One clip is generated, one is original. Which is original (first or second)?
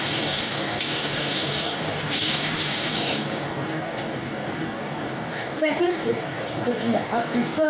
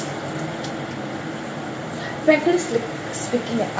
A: second